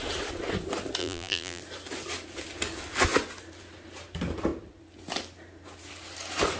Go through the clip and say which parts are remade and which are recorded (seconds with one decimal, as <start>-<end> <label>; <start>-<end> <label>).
0.0-1.0 recorded; 1.0-1.6 remade; 1.6-6.6 recorded